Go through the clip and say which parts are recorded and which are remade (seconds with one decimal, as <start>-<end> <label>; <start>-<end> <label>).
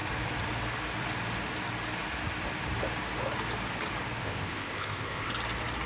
0.0-4.2 recorded; 4.2-5.3 remade; 5.3-5.9 recorded